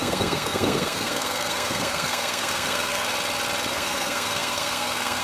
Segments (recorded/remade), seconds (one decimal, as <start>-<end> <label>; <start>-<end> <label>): 0.0-3.1 remade; 3.1-3.7 recorded; 3.7-5.2 remade